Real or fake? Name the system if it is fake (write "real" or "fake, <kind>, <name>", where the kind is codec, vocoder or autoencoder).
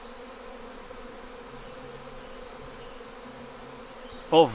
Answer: real